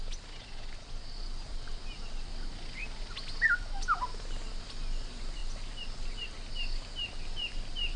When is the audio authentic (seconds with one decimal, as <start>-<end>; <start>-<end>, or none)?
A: 0.0-8.0